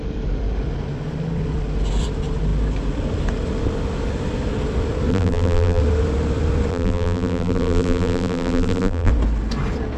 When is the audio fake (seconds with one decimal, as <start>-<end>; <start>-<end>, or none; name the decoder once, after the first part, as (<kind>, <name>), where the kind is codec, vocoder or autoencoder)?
5.1-5.8 (vocoder, BigVGAN v2); 6.7-9.1